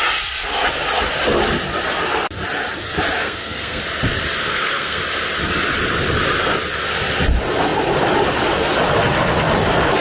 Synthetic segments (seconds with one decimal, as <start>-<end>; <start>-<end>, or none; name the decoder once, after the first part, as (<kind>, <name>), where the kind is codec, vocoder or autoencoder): 3.2-3.8 (codec, SNAC); 4.4-5.0